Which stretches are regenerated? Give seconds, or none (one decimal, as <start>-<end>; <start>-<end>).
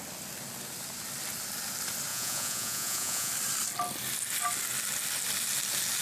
2.1-3.3